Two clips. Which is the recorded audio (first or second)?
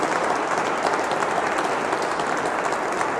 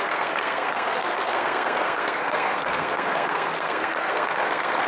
first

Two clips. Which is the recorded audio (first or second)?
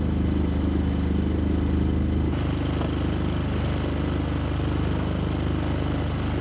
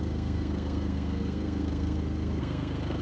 first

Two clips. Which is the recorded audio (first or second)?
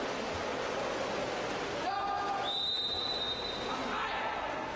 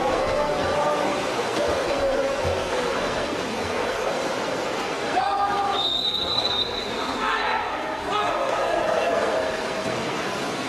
first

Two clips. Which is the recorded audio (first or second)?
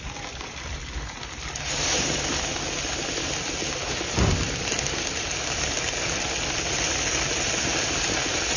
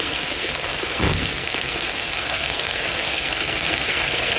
first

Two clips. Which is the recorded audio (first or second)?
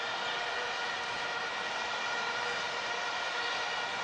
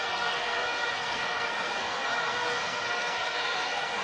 first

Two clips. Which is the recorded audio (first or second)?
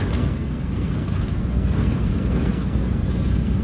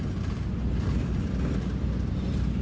second